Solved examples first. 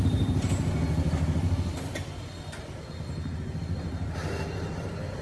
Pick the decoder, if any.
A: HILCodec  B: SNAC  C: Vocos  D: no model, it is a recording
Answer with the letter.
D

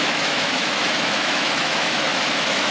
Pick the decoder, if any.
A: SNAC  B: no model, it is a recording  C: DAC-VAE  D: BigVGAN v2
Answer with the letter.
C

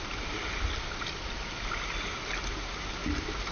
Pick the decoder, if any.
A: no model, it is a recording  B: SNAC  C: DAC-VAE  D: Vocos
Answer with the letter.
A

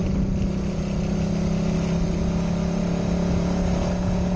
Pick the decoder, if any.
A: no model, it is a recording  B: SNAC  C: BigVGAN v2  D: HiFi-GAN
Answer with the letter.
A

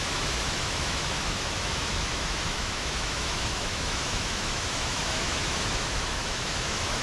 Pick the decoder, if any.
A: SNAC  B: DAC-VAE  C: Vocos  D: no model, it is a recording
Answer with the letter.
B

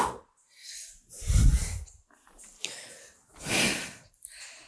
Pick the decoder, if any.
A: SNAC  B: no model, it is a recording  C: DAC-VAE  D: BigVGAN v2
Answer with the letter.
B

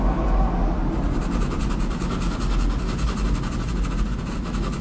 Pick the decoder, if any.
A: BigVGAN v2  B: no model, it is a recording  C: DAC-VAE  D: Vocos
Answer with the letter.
B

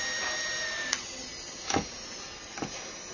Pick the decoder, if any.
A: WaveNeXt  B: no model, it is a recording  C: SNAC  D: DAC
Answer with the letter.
B